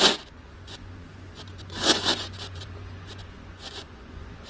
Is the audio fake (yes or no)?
yes